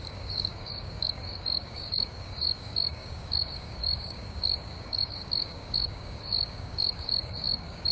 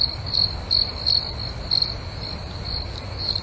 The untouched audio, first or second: second